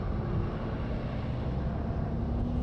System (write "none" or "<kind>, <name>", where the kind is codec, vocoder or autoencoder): none